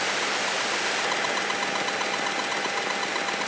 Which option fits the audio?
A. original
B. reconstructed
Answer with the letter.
A